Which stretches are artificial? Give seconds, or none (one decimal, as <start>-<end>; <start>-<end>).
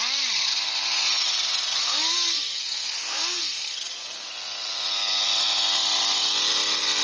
1.8-4.3